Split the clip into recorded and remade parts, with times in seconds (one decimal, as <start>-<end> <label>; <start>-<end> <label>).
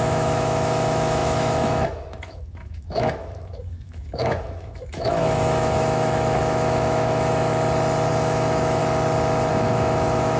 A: 0.0-7.5 remade; 7.5-8.1 recorded; 8.1-8.8 remade; 8.8-9.5 recorded; 9.5-10.4 remade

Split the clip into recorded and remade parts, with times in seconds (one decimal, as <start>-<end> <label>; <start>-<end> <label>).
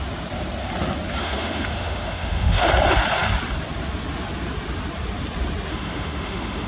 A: 0.0-1.2 recorded; 1.2-2.7 remade; 2.7-5.7 recorded; 5.7-6.7 remade